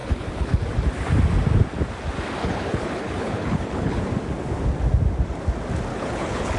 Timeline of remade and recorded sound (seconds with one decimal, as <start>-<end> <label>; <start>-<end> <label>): 0.0-0.6 remade; 0.6-2.4 recorded; 2.4-4.0 remade; 4.0-5.9 recorded; 5.9-6.6 remade